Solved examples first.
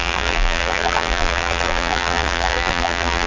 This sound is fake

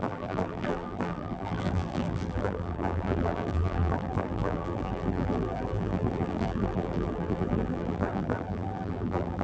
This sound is fake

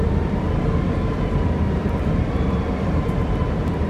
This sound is fake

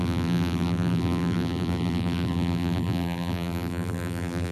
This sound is fake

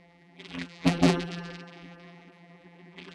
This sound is fake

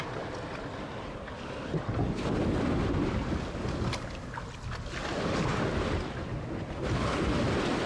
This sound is real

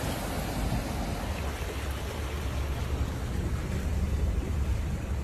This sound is real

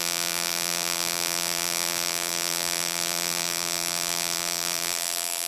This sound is fake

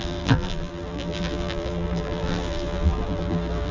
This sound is fake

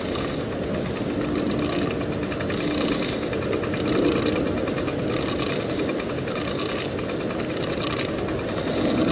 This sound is real